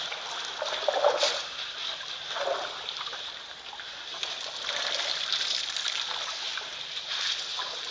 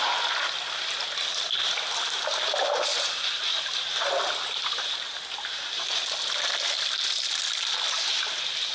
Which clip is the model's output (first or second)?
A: first